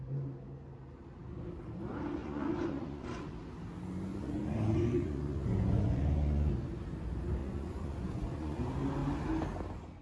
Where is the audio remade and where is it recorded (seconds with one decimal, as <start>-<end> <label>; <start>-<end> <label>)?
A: 0.0-2.2 recorded; 2.2-3.3 remade; 3.3-4.1 recorded; 4.1-6.5 remade; 6.5-7.4 recorded; 7.4-8.6 remade; 8.6-10.0 recorded